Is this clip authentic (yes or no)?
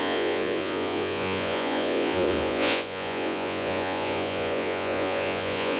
no